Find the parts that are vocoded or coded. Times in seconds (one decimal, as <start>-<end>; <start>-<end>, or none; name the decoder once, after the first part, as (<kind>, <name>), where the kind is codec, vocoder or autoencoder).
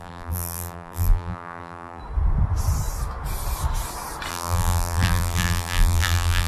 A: 0.0-2.0 (vocoder, BigVGAN v2); 4.3-6.5